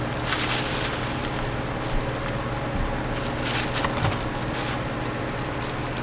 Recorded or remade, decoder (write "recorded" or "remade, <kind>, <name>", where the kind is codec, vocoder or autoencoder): recorded